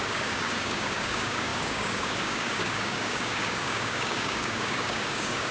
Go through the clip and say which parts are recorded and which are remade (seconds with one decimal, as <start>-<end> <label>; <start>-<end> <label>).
0.0-5.5 remade